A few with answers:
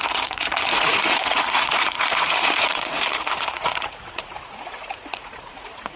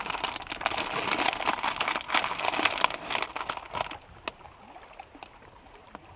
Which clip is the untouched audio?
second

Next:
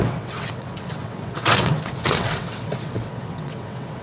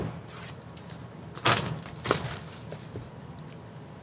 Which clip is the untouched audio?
second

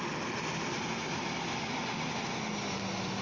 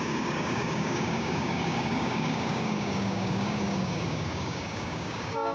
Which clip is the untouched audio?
first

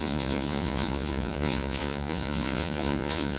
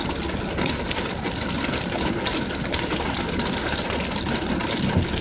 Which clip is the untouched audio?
second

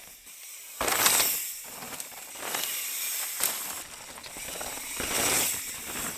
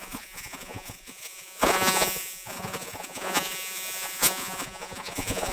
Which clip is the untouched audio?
first